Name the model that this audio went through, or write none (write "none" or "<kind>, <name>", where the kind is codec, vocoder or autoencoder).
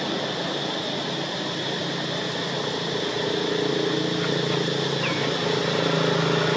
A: none